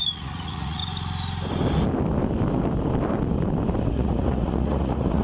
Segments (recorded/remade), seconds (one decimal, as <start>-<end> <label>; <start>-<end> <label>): 0.0-0.8 remade; 0.8-3.9 recorded; 3.9-5.2 remade